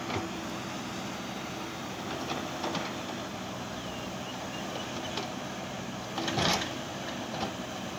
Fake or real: real